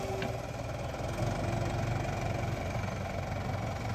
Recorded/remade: recorded